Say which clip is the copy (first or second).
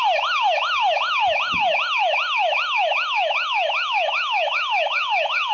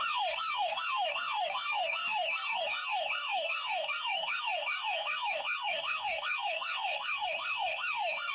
second